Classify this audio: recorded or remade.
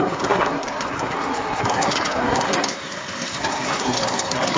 remade